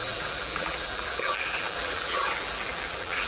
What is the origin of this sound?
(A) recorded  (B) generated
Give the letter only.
B